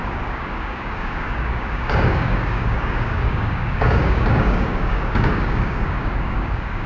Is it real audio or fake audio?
fake